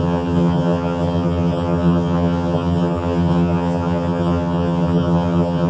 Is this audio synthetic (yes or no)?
yes